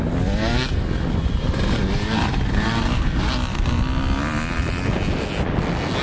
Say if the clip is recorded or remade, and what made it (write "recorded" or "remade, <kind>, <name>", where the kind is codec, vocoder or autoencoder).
recorded